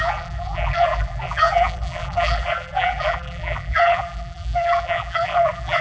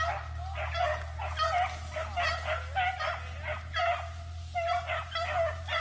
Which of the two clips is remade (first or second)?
first